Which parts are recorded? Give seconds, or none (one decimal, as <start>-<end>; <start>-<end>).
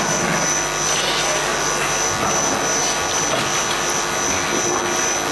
0.0-5.3